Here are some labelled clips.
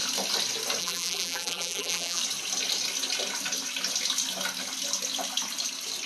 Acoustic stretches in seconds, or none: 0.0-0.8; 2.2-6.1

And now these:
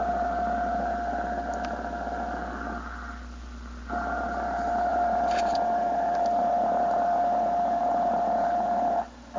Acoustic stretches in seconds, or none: 0.0-9.4

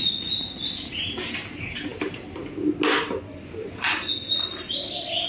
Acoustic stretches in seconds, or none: 0.0-5.3

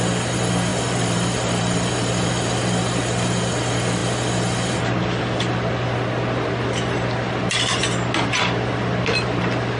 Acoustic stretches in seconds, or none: 0.0-0.7; 2.3-9.8

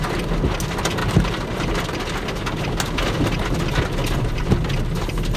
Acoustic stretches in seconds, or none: 0.0-1.0; 1.7-5.4

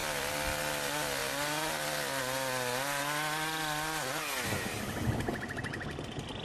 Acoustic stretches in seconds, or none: 0.0-6.4